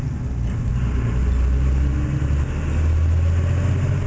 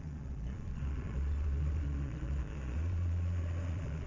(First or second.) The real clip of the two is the first